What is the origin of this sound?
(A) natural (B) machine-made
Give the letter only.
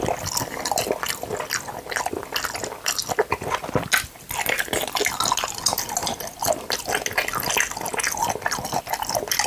A